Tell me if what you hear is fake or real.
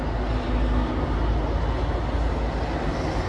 real